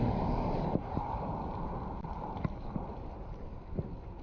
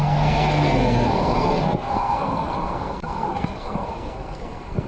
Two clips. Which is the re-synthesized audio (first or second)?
second